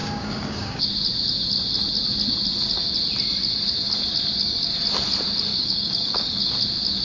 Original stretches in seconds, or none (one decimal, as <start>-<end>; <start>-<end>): 0.8-5.5; 6.5-7.0